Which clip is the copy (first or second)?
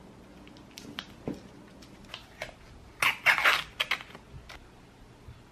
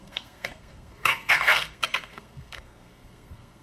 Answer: second